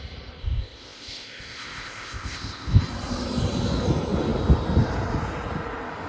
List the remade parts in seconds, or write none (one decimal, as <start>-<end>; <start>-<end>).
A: 0.4-2.8